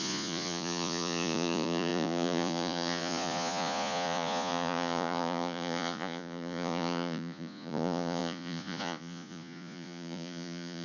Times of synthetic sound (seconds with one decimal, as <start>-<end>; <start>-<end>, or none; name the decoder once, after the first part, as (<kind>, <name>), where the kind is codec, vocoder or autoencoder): 0.0-10.8 (vocoder, Vocos)